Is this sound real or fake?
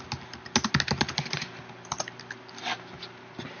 real